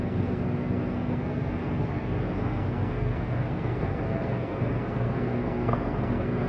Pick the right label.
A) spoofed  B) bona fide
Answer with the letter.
A